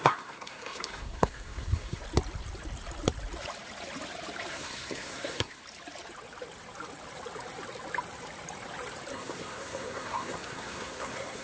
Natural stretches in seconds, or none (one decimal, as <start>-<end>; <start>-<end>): 2.0-4.5; 5.6-9.1